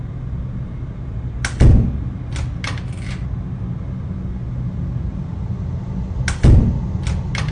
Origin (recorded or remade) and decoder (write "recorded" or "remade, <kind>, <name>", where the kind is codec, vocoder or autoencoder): recorded